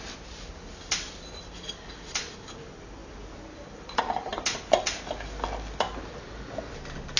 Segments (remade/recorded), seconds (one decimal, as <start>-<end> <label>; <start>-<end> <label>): 0.0-7.2 recorded